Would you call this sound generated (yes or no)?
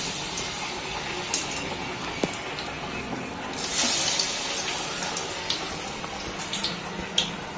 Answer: no